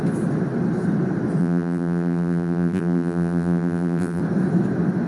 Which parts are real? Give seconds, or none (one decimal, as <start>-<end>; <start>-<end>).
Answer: 0.0-1.4; 4.2-5.1